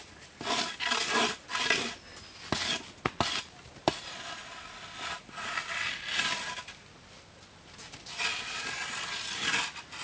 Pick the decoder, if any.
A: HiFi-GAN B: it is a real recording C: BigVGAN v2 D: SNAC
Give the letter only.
B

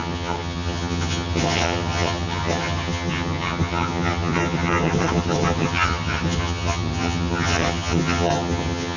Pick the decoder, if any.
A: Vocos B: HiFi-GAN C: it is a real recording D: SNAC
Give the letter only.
B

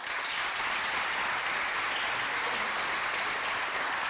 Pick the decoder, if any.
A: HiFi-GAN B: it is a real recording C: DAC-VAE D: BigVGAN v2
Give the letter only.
B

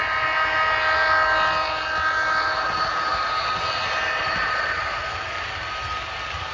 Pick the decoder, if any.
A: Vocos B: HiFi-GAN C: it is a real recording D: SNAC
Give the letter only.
C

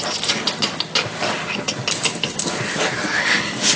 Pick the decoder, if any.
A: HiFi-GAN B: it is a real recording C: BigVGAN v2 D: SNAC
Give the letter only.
B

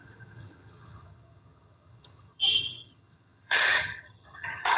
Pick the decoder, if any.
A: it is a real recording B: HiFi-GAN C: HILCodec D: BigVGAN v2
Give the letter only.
B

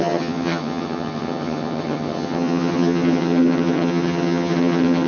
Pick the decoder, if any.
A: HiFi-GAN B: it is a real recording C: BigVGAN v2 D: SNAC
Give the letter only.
A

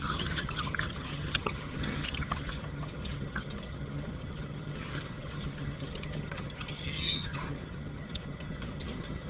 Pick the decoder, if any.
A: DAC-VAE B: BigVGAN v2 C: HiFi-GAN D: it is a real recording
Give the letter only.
C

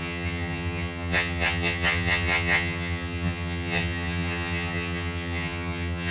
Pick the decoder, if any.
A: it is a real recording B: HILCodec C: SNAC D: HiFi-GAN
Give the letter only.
D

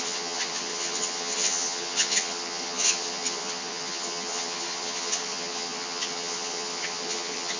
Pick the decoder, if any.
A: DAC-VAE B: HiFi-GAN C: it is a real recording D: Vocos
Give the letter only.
B